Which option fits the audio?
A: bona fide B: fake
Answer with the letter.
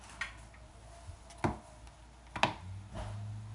A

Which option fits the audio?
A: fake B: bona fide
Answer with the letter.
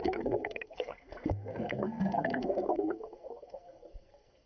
A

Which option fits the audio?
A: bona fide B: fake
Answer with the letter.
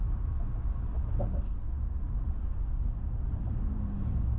A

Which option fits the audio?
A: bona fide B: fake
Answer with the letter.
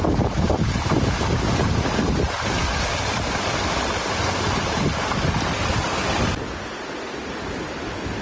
A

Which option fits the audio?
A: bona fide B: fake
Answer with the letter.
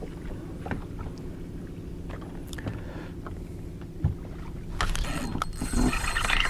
A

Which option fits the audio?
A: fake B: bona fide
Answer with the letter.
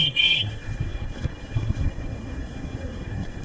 A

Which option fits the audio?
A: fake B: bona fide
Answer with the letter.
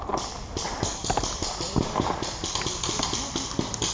B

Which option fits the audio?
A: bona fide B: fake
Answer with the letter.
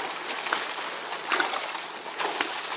A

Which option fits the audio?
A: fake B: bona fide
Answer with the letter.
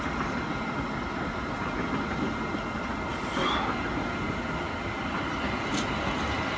B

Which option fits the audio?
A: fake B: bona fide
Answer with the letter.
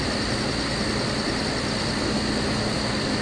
B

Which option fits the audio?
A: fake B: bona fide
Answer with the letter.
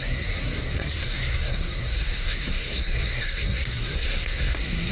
A